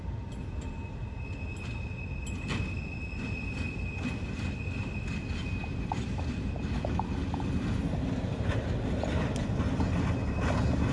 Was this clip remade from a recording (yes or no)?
no